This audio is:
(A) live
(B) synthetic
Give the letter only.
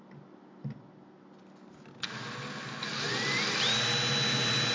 A